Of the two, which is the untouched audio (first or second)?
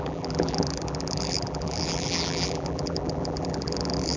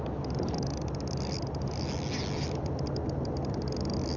second